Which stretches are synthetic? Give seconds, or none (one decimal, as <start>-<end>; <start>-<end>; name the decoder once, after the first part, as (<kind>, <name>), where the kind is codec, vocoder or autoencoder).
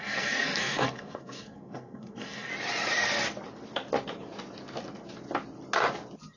0.0-2.5 (codec, SNAC)